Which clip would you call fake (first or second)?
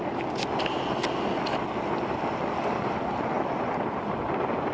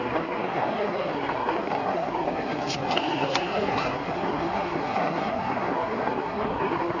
second